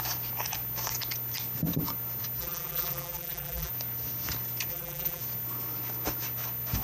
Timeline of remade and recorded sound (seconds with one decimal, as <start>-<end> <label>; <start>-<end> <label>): 0.0-2.4 recorded; 2.4-3.7 remade; 3.7-4.7 recorded; 4.7-5.2 remade; 5.2-6.8 recorded